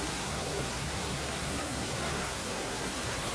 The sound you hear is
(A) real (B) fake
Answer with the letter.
B